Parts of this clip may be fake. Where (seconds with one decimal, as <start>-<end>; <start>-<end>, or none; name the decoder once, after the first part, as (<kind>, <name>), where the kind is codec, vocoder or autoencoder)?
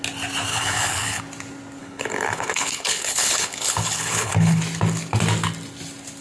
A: 0.5-1.2 (codec, HILCodec); 1.8-4.6